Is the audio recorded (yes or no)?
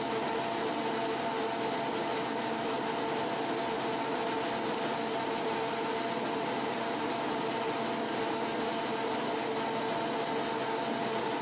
yes